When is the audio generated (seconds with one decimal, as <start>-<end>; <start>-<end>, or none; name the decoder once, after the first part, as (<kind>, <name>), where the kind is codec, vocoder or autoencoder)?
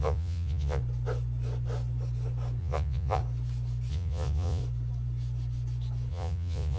0.0-0.8 (vocoder, Vocos); 2.6-3.2; 3.9-4.6; 6.1-6.8